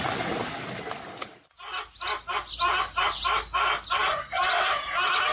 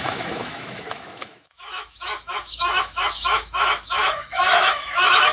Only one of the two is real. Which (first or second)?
first